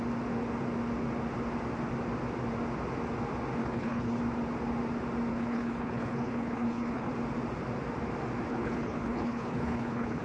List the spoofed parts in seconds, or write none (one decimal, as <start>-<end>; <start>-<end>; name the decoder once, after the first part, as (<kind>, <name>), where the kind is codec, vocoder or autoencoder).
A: 3.6-4.2 (codec, HILCodec); 5.3-7.1; 8.5-10.2